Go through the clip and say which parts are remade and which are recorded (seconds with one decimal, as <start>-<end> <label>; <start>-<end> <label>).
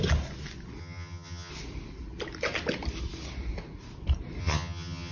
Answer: 0.0-0.8 recorded; 0.8-1.5 remade; 1.5-4.4 recorded; 4.4-5.1 remade